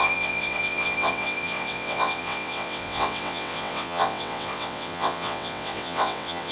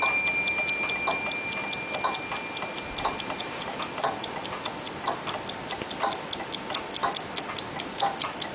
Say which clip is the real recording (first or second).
second